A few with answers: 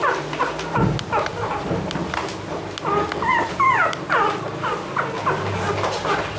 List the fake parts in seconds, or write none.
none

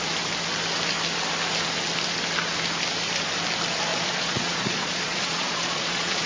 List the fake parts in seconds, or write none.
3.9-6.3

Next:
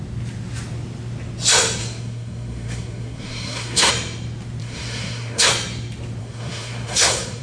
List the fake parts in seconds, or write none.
1.8-3.9; 4.6-5.5; 6.2-7.4

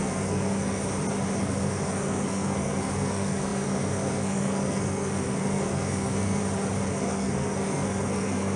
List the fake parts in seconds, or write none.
0.0-0.8; 1.4-6.4; 6.9-8.6

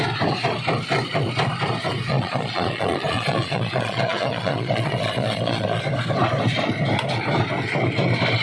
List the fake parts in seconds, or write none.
2.1-5.8

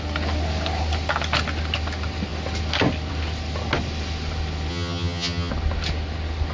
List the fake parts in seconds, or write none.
4.7-5.5

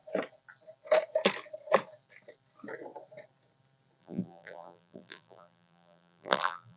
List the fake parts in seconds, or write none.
4.0-6.8